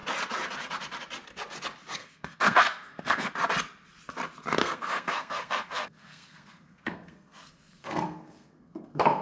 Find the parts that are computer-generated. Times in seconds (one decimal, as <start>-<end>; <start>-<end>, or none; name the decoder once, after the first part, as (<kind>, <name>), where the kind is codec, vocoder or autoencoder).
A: 2.0-3.3 (codec, SNAC); 4.6-9.2